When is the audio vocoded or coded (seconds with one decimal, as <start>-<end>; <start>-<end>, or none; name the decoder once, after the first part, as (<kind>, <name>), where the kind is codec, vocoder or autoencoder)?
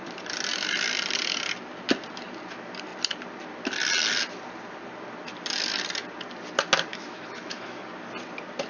6.9-7.8 (autoencoder, DAC-VAE)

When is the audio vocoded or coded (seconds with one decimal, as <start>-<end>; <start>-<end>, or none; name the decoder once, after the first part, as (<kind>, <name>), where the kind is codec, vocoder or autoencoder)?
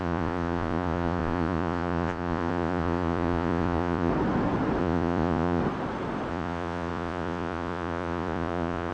0.0-4.1 (vocoder, Vocos); 4.8-5.6; 6.3-8.9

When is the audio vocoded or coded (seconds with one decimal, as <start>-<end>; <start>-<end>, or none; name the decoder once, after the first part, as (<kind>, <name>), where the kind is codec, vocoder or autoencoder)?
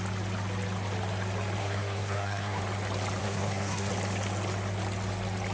1.6-2.6 (codec, SNAC); 3.2-3.9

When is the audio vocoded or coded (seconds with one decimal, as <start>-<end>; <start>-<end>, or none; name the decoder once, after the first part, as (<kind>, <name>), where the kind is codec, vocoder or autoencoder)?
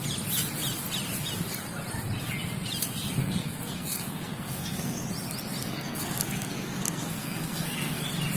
3.2-5.0 (codec, SNAC); 5.6-8.0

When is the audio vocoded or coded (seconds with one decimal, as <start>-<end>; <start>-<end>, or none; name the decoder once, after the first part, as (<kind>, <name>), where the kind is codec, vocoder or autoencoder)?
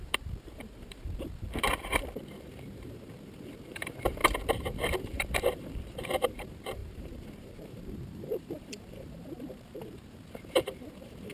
0.0-11.3 (vocoder, BigVGAN v2)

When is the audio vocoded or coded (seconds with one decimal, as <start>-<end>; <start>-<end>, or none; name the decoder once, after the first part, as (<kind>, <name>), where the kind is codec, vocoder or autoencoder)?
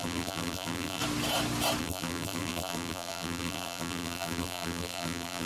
0.0-1.0 (vocoder, BigVGAN v2); 1.8-5.5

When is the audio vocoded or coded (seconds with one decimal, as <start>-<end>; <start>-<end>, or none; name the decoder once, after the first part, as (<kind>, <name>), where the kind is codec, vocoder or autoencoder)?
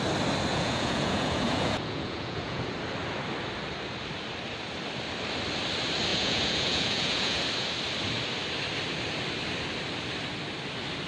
0.5-2.7 (vocoder, Vocos); 6.1-7.4